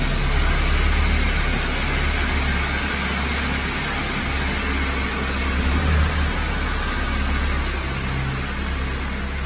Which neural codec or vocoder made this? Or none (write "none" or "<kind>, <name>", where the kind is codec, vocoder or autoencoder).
none